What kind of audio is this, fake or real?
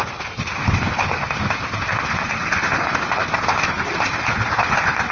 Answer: real